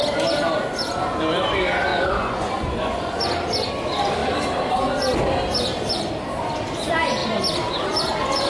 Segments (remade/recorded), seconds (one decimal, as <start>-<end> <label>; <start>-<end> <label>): 0.0-1.9 recorded; 1.9-3.2 remade; 3.2-8.5 recorded